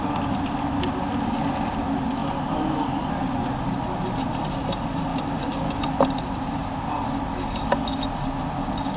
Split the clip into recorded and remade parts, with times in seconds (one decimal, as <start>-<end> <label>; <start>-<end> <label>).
0.0-5.1 recorded; 5.1-5.8 remade; 5.8-9.0 recorded